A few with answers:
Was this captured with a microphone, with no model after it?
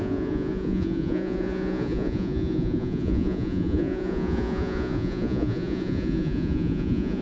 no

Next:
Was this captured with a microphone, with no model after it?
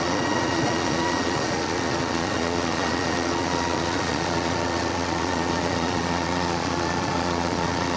no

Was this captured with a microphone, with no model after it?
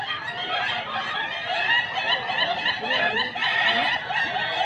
yes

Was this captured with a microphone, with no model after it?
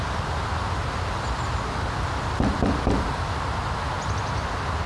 yes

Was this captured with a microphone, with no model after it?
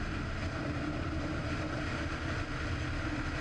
yes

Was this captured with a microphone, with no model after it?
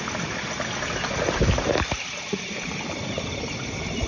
yes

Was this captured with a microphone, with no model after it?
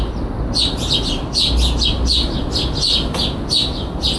yes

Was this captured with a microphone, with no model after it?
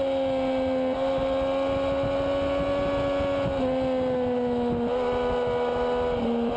yes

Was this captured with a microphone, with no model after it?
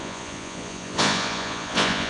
no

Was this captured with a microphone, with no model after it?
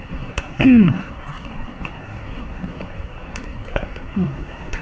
no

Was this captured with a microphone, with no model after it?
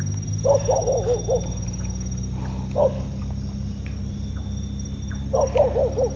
yes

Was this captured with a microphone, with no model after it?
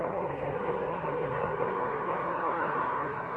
no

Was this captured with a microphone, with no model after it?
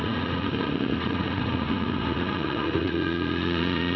no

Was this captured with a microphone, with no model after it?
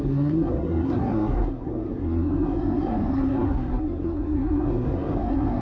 no